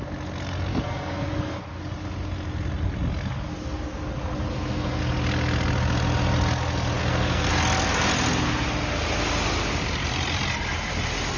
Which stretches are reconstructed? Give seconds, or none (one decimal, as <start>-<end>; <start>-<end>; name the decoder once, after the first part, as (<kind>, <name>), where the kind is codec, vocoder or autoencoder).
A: 0.7-1.8 (codec, SNAC); 4.5-5.0; 7.0-7.5